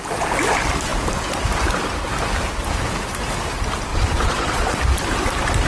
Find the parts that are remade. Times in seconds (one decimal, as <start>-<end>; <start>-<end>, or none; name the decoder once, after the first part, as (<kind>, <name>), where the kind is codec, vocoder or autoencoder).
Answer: 3.9-4.8 (vocoder, Vocos)